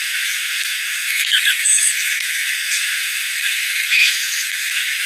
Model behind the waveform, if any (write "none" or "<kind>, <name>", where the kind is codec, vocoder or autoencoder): codec, SNAC